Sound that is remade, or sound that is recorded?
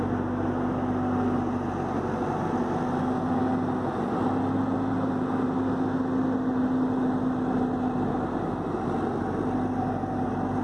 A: recorded